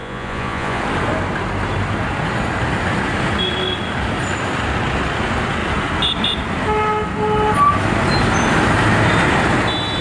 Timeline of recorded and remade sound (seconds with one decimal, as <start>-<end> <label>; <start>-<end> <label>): 0.0-0.8 remade; 0.8-10.0 recorded